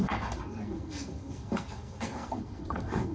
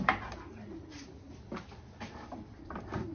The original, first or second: second